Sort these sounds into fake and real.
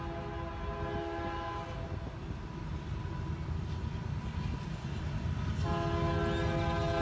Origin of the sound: real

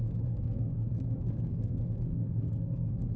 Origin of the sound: fake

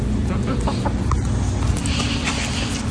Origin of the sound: real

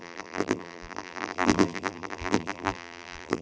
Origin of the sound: fake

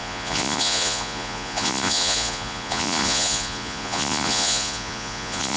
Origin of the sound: fake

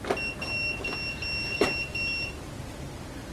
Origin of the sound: real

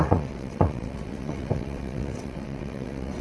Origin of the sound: fake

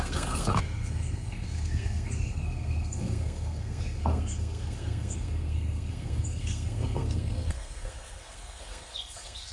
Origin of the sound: fake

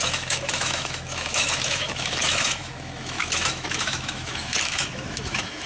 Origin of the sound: fake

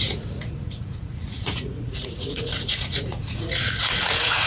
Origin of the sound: fake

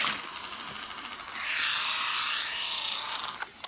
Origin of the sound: real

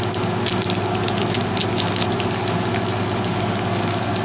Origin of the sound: real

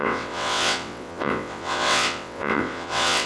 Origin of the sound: fake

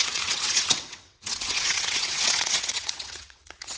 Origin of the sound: fake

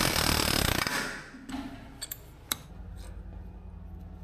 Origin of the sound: real